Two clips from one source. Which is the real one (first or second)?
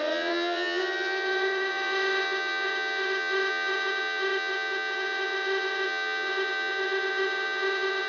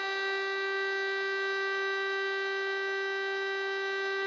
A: second